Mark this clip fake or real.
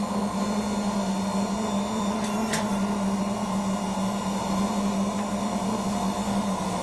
real